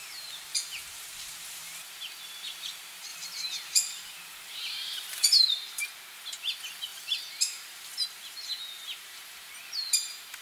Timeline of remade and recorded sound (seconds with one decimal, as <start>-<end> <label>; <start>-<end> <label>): 0.0-1.9 remade; 1.9-3.1 recorded; 3.1-5.4 remade; 5.4-6.9 recorded; 6.9-9.5 remade; 9.5-10.4 recorded